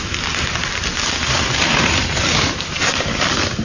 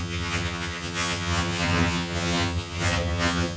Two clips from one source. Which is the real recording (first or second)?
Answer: first